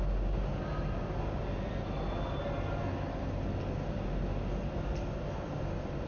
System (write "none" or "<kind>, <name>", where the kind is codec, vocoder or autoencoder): none